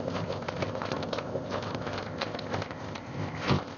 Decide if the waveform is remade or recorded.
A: remade